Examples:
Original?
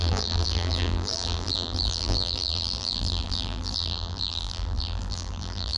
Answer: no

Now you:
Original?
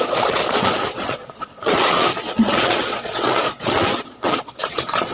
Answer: no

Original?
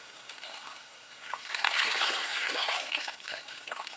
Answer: no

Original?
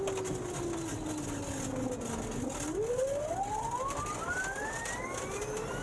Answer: yes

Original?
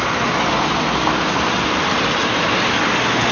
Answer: yes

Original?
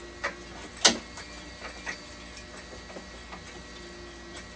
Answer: yes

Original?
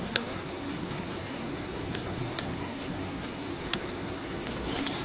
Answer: no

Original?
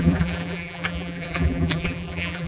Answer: no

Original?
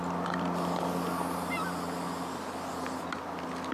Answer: yes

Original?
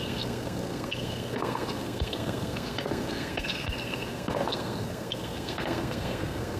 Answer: no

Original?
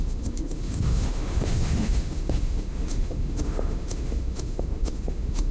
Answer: no